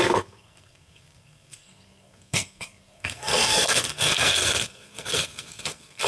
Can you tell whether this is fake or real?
fake